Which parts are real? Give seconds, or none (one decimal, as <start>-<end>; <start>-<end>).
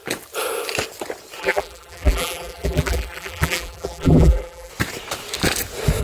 0.0-1.4; 4.7-6.0